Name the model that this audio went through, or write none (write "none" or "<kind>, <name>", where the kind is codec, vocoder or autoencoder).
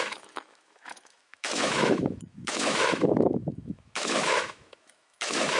autoencoder, DAC-VAE